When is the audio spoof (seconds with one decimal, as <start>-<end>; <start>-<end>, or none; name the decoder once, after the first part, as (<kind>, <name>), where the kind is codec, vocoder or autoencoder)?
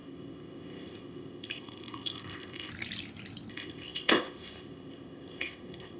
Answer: 0.0-2.7 (codec, ZipCodec); 3.5-6.0